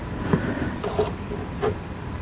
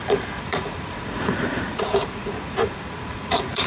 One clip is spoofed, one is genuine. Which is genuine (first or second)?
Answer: first